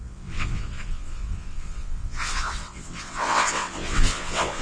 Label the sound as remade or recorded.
remade